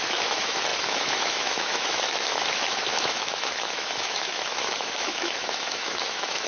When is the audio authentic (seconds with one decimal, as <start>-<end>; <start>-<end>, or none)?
none